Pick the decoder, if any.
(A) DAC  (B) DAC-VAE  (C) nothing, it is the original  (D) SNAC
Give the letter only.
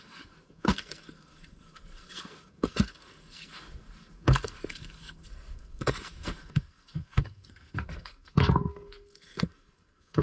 D